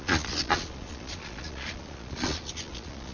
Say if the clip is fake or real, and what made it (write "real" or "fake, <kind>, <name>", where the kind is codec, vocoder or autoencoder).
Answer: fake, vocoder, Vocos